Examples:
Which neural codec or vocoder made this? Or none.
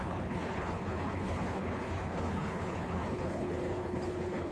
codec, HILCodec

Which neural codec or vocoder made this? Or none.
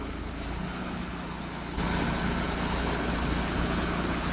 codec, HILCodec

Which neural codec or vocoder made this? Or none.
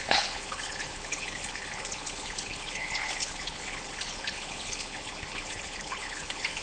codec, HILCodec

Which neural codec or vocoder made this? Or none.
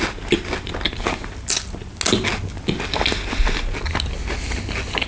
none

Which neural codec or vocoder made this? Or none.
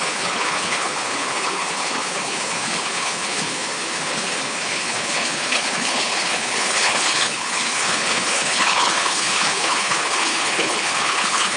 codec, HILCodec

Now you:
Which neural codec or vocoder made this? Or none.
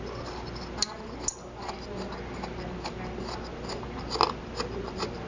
none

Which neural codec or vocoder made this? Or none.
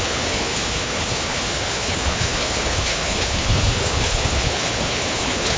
codec, HILCodec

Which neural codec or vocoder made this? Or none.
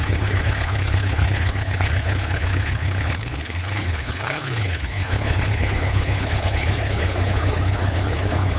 codec, HILCodec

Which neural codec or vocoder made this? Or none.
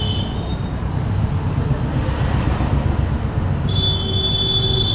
none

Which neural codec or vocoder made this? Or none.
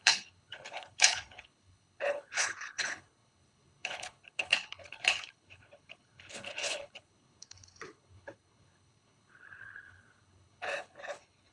codec, HILCodec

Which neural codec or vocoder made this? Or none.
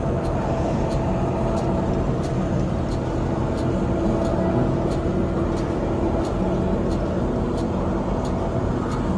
none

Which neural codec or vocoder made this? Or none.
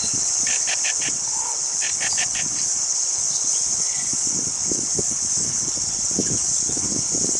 codec, HILCodec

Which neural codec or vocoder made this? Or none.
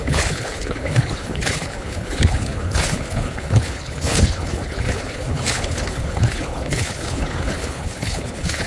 codec, HILCodec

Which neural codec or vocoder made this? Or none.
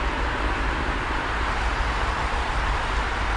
none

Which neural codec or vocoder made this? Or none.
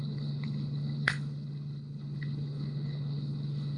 codec, HILCodec